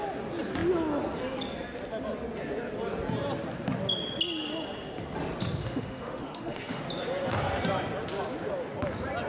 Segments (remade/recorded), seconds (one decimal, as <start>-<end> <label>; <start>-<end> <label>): 0.0-5.6 recorded; 5.6-6.8 remade; 6.8-9.3 recorded